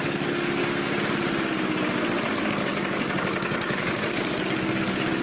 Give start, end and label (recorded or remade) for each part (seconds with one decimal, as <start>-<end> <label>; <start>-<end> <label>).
0.0-0.6 remade; 0.6-2.3 recorded; 2.3-5.2 remade